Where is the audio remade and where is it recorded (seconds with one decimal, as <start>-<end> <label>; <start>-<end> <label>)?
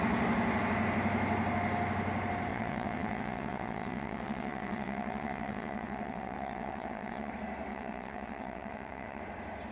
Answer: 0.0-2.5 recorded; 2.5-7.3 remade; 7.3-7.7 recorded; 7.7-9.2 remade; 9.2-9.7 recorded